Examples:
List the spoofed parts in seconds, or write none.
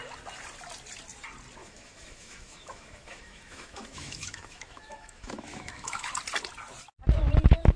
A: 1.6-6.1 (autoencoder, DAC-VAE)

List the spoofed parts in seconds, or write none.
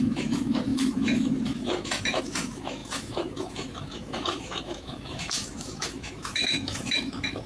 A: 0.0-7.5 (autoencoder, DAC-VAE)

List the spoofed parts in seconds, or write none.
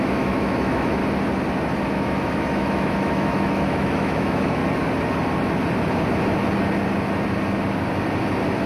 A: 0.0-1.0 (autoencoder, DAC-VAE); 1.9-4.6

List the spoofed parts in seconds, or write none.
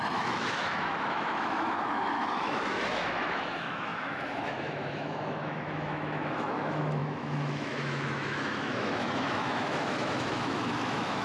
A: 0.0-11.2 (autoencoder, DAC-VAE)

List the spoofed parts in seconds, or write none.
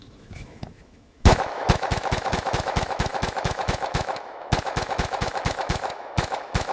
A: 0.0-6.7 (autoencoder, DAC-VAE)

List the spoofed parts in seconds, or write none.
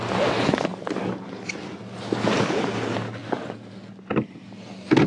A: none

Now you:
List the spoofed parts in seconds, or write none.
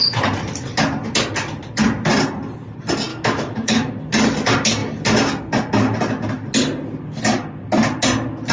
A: 3.1-3.9 (autoencoder, DAC-VAE)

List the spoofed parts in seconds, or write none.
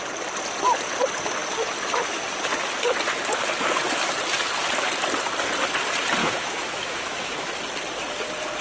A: 6.2-7.5 (autoencoder, DAC-VAE)